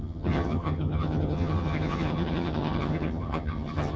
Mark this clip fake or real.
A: fake